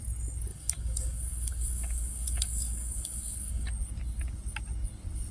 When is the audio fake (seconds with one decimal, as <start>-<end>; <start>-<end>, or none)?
0.5-3.7